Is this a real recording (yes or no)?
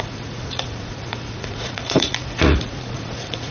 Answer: no